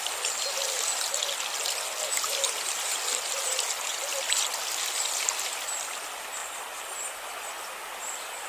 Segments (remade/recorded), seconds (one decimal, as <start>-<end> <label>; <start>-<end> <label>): 0.0-8.5 recorded